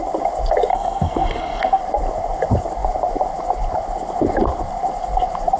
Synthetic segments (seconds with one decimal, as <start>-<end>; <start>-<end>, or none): 0.7-1.8